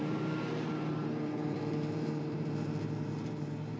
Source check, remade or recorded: remade